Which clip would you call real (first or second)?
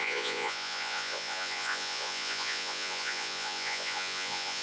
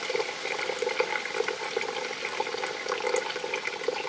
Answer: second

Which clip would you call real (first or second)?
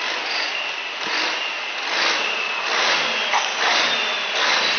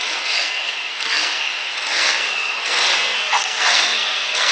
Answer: first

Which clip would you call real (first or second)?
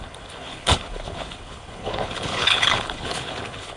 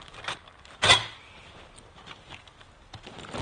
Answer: second